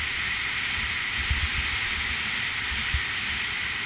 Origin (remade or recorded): recorded